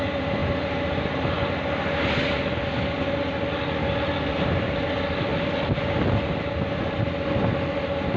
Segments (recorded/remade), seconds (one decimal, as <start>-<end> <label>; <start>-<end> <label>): 0.0-8.2 recorded